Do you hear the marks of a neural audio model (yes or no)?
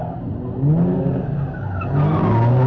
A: no